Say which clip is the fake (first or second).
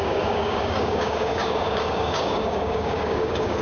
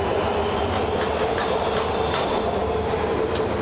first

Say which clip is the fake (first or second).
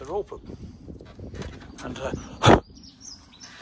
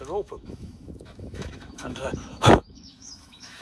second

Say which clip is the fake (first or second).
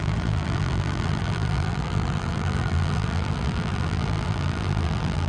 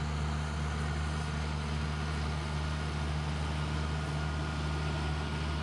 first